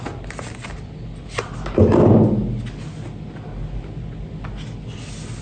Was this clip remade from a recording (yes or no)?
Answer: no